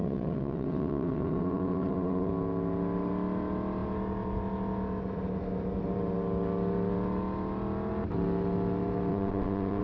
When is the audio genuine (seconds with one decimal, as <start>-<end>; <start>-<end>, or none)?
2.3-9.1